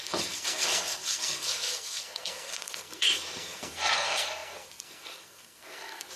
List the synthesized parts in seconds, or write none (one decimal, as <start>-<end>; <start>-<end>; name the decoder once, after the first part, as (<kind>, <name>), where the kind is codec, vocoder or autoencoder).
0.0-6.2 (codec, SNAC)